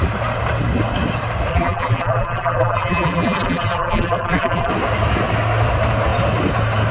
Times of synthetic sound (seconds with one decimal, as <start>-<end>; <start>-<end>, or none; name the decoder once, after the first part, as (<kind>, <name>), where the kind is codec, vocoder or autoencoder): 1.5-4.7 (vocoder, BigVGAN v2)